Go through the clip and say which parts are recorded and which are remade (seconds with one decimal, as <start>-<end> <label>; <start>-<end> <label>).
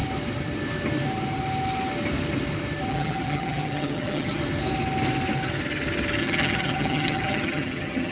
0.0-2.9 recorded; 2.9-4.4 remade; 4.4-6.2 recorded; 6.2-8.1 remade